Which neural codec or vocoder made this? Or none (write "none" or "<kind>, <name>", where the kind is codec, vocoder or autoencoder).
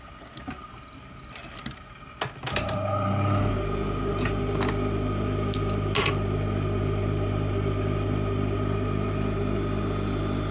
none